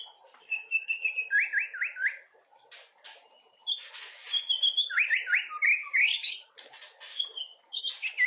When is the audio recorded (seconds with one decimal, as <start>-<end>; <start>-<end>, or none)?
0.0-5.8; 6.5-7.1; 7.8-8.3